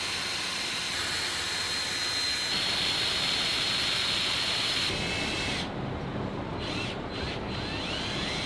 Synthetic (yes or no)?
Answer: no